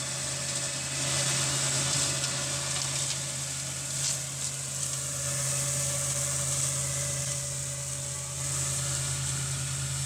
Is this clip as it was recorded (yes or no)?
yes